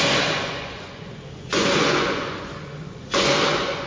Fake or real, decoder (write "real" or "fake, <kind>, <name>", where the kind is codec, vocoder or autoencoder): fake, vocoder, Vocos